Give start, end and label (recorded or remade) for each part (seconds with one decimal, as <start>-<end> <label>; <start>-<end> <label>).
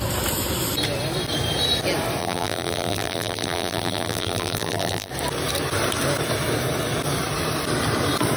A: 0.0-2.2 recorded; 2.2-5.1 remade; 5.1-8.4 recorded